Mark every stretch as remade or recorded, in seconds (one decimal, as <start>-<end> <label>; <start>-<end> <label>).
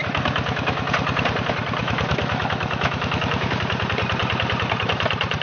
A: 0.0-0.9 remade; 0.9-1.8 recorded; 1.8-3.6 remade; 3.6-5.4 recorded